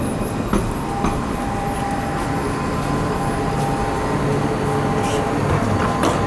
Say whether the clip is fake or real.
real